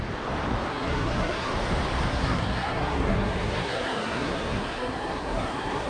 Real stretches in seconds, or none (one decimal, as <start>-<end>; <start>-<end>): 0.0-0.7; 1.5-2.1